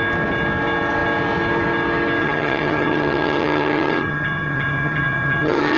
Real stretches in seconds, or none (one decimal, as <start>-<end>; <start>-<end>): 0.0-2.2